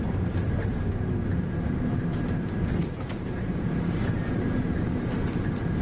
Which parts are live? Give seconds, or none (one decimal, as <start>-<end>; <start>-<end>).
0.7-1.3